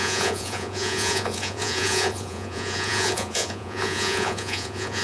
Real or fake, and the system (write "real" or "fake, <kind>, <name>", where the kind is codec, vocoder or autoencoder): fake, vocoder, Vocos